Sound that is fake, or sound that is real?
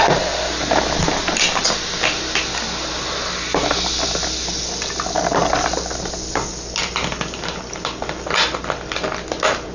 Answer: real